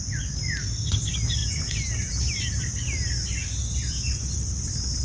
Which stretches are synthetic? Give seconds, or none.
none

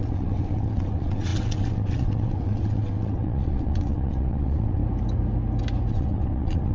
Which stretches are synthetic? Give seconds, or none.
0.0-4.8 (vocoder, WaveNeXt); 5.9-6.7

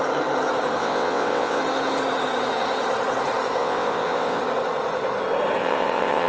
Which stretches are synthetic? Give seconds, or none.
0.8-1.6 (vocoder, WaveNeXt); 3.6-4.4; 5.6-6.3

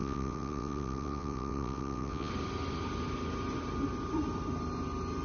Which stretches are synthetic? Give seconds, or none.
0.0-2.3 (vocoder, WaveNeXt)